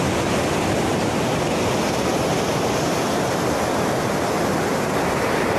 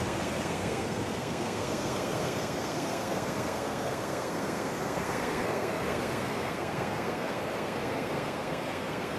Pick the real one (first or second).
first